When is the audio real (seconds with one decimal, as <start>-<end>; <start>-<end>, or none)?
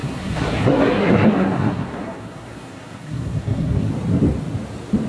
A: 3.9-5.1